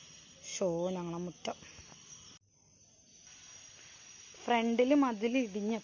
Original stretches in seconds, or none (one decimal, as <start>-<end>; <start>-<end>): 0.0-5.8